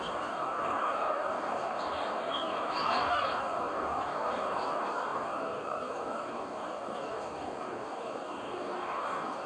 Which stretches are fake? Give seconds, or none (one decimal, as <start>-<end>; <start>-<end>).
0.0-9.5